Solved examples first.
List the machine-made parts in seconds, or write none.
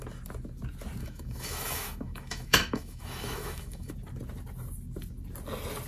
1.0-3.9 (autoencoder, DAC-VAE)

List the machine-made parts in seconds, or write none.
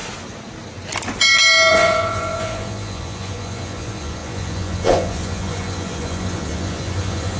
1.7-7.4 (vocoder, Vocos)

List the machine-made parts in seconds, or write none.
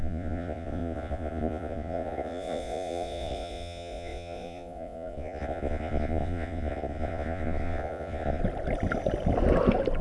0.0-8.4 (vocoder, Vocos)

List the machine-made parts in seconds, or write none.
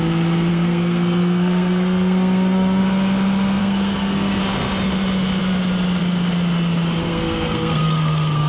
0.5-2.8 (codec, SNAC); 3.6-4.4; 7.0-8.5